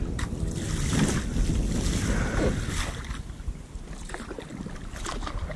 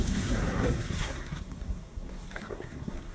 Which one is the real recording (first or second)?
first